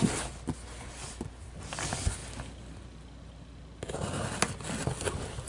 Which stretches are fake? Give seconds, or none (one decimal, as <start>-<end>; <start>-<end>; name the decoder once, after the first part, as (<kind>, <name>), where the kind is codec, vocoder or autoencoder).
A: none